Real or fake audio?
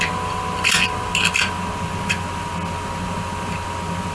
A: real